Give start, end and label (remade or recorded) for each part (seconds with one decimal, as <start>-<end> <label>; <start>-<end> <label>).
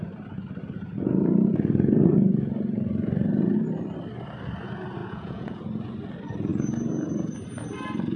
0.0-5.0 recorded; 5.0-5.6 remade; 5.6-8.2 recorded